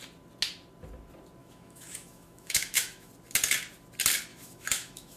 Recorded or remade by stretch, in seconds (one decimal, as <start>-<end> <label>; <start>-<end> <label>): 0.0-1.4 recorded; 1.4-3.1 remade; 3.1-4.3 recorded; 4.3-5.2 remade